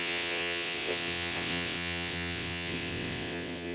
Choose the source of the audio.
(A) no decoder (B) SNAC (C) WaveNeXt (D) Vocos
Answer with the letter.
C